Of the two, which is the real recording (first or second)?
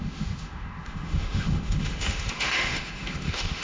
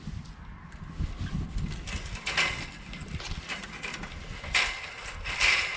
second